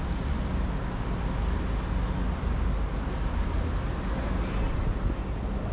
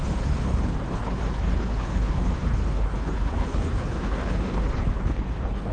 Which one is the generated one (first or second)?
second